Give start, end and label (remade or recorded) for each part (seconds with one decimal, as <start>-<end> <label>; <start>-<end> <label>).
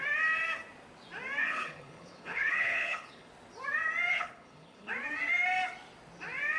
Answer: 0.0-1.4 recorded; 1.4-3.3 remade; 3.3-4.1 recorded; 4.1-4.9 remade; 4.9-6.6 recorded